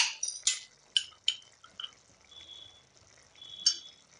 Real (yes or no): yes